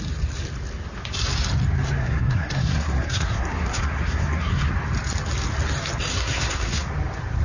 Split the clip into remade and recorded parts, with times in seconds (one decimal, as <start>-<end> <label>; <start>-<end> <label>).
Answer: 0.0-2.0 recorded; 2.0-4.7 remade; 4.7-6.1 recorded; 6.1-6.9 remade; 6.9-7.4 recorded